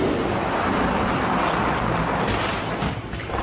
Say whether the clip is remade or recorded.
recorded